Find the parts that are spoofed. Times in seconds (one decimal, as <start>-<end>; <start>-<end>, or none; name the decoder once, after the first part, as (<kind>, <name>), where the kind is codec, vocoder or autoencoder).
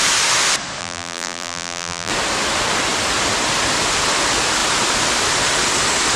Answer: 0.8-2.1 (vocoder, BigVGAN v2)